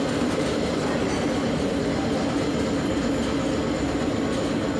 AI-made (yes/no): no